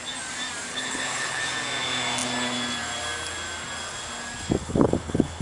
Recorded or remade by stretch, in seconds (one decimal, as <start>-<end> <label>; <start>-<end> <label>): 0.0-0.7 recorded; 0.7-1.4 remade; 1.4-4.6 recorded; 4.6-5.4 remade

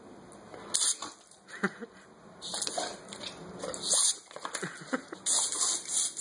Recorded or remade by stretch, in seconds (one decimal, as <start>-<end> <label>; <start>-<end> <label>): 0.0-6.2 recorded